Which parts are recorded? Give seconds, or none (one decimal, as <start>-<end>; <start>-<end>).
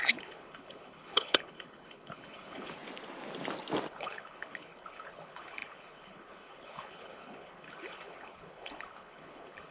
2.8-3.9